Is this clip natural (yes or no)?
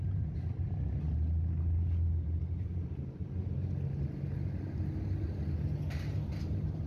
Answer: yes